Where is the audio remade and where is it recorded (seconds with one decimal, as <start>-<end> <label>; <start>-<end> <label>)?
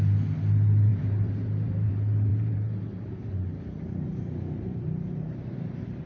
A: 0.0-0.9 recorded; 0.9-1.9 remade; 1.9-2.3 recorded; 2.3-6.1 remade